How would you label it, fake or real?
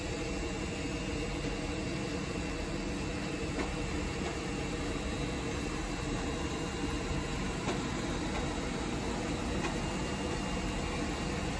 real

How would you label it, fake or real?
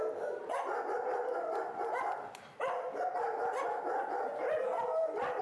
real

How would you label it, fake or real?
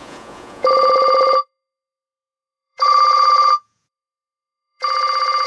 fake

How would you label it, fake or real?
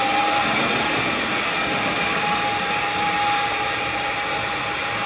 real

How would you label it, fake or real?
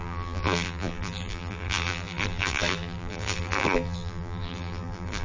fake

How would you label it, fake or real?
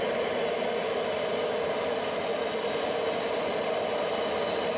real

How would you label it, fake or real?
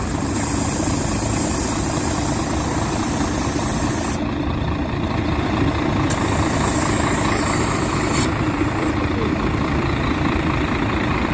real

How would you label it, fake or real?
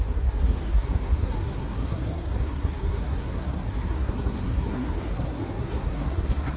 fake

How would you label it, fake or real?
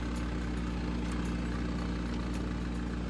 real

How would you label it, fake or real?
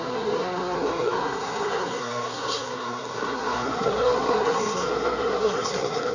fake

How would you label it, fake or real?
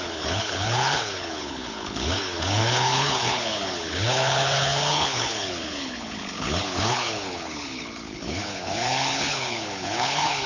fake